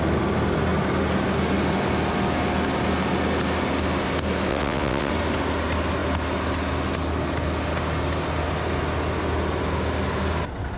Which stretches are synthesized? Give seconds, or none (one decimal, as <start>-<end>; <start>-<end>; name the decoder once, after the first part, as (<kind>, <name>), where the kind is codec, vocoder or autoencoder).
4.5-5.1 (vocoder, WaveNeXt)